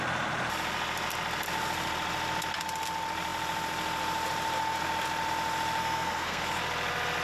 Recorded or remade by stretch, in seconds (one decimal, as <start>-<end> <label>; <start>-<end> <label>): 0.0-5.8 recorded; 5.8-6.4 remade; 6.4-7.2 recorded